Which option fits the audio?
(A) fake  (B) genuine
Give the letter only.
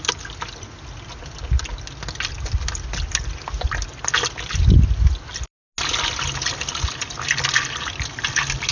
B